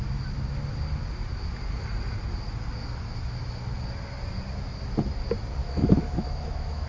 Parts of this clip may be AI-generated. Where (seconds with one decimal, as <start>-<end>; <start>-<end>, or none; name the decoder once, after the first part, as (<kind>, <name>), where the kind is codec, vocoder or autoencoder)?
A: 5.6-6.9 (autoencoder, DAC-VAE)